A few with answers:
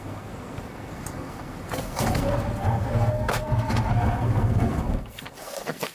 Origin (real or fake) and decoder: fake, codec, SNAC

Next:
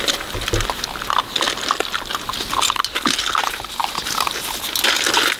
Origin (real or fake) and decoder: real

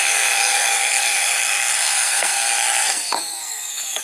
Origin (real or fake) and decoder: fake, codec, SNAC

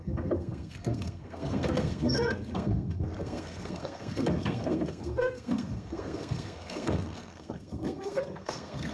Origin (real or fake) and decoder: fake, codec, SNAC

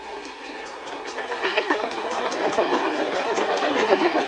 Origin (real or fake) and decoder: fake, codec, SNAC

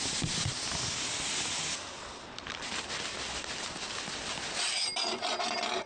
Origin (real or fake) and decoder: real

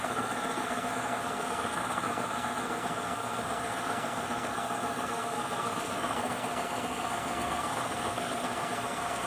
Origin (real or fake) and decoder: fake, codec, SNAC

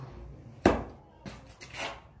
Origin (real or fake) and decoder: real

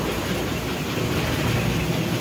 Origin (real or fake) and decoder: real